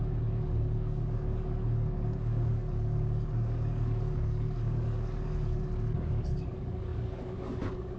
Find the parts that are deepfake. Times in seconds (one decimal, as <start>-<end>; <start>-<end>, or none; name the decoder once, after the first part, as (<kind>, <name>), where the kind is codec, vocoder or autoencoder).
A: 0.0-8.0 (codec, DAC)